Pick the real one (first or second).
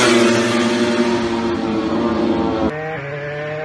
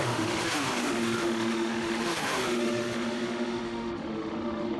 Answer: first